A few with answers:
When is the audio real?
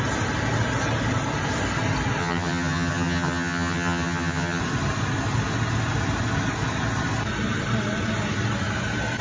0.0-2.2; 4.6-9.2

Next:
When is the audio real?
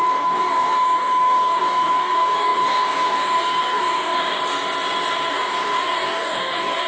4.4-5.3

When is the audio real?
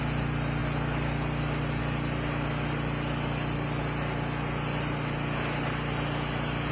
0.0-6.7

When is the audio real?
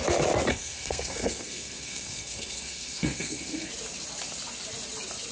0.0-0.5; 3.7-5.3